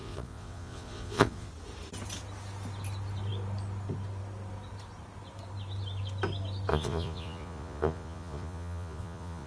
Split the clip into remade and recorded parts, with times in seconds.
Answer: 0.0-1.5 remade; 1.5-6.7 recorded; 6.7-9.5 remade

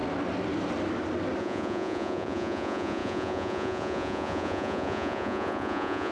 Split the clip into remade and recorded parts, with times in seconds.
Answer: 0.0-1.4 recorded; 1.4-6.1 remade

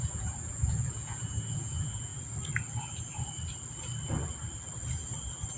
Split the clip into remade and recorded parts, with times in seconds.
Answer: 0.0-2.1 remade; 2.1-5.6 recorded

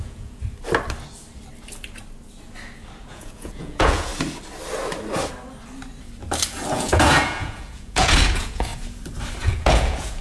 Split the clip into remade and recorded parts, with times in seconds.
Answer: 0.0-0.4 remade; 0.4-3.0 recorded; 3.0-4.1 remade; 4.1-6.7 recorded; 6.7-8.7 remade; 8.7-9.4 recorded; 9.4-10.2 remade

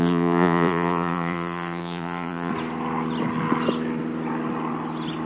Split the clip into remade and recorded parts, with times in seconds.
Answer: 0.0-2.5 remade; 2.5-5.3 recorded

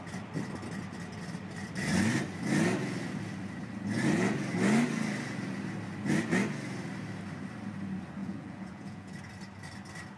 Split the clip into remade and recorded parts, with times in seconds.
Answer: 0.0-8.2 recorded; 8.2-9.2 remade; 9.2-10.2 recorded